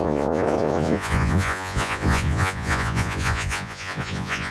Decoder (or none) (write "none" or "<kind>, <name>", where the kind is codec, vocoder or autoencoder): vocoder, Vocos